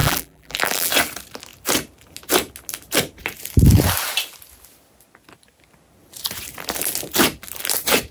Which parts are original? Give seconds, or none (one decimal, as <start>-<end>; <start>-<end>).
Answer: 0.9-8.1